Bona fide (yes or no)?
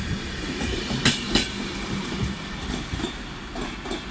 yes